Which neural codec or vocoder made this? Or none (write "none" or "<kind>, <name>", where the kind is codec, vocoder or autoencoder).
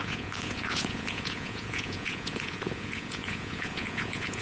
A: vocoder, Vocos